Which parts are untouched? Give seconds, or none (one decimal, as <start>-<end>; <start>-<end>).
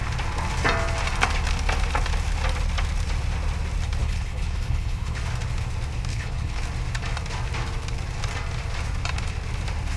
0.0-4.0; 5.2-6.1; 6.6-10.0